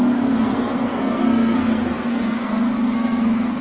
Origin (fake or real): fake